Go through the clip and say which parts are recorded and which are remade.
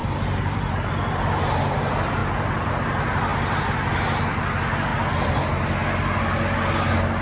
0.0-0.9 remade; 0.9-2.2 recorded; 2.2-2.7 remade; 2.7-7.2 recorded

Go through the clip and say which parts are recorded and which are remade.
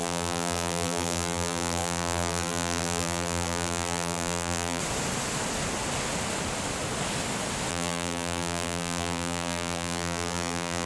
0.0-4.8 remade; 4.8-7.7 recorded; 7.7-10.9 remade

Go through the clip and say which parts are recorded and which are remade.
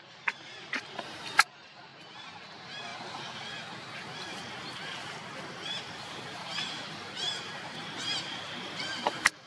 0.0-2.9 remade; 2.9-5.5 recorded; 5.5-9.5 remade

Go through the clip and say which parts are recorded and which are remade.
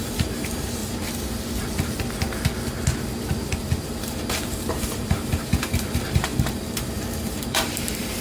0.0-0.8 remade; 0.8-4.0 recorded; 4.0-8.2 remade